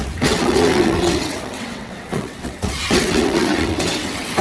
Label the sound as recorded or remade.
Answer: remade